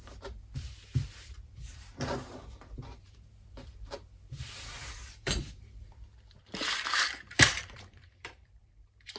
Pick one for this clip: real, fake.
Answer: fake